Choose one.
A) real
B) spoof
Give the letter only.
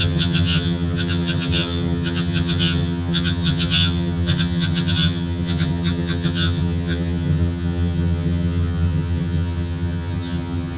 B